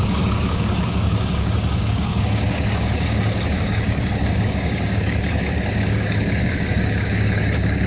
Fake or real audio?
fake